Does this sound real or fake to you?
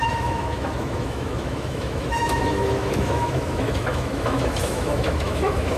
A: fake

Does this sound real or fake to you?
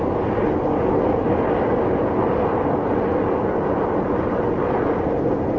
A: real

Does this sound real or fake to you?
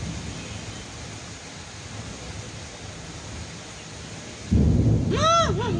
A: real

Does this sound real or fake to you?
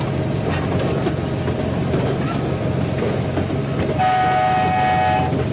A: real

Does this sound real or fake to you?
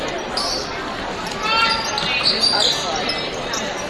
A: real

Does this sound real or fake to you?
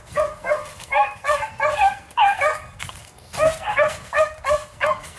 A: fake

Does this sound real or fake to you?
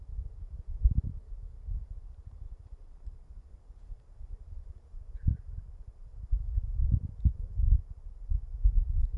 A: fake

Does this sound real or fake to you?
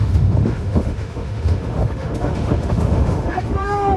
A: fake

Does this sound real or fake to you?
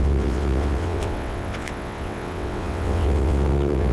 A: fake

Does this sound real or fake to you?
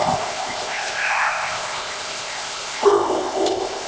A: fake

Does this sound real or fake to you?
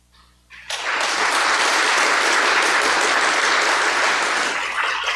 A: real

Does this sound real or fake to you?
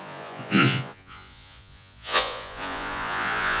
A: fake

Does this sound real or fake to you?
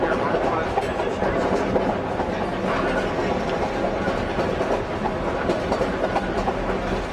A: real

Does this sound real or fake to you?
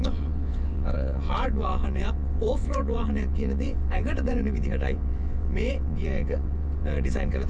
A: fake